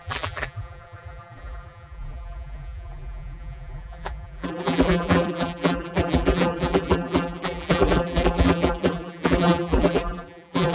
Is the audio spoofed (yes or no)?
yes